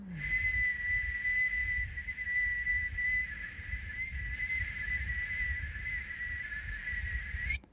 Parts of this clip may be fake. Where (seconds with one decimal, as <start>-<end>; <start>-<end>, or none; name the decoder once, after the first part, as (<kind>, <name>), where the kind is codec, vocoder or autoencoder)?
2.7-5.9 (vocoder, BigVGAN v2)